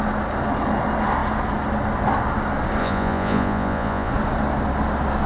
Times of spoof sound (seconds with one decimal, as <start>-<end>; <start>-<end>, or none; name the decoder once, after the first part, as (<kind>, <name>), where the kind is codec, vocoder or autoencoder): 2.8-4.1 (vocoder, Vocos)